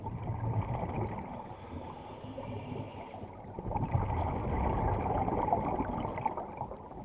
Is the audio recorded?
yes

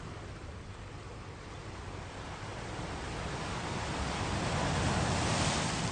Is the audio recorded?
yes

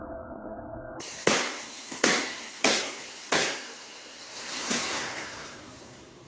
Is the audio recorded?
no